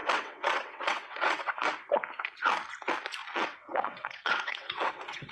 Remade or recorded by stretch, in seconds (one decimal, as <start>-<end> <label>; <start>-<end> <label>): 0.0-1.5 remade; 1.5-3.2 recorded; 3.2-5.3 remade